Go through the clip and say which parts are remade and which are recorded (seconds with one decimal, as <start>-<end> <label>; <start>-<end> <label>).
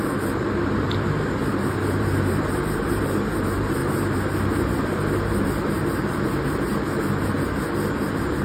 0.0-8.4 remade